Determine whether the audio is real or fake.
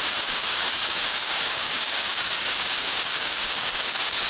fake